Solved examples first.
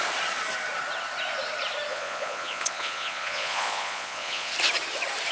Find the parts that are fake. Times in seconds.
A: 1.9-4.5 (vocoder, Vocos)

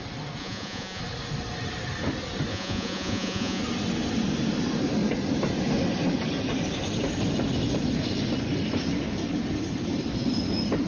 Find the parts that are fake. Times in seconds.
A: 0.4-1.0 (vocoder, Vocos); 2.5-3.6

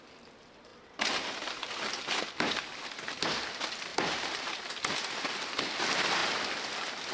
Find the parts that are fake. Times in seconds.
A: 0.7-2.2 (vocoder, BigVGAN v2); 3.9-4.7